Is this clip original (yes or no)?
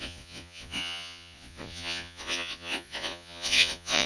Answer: no